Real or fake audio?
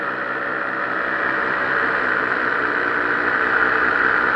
real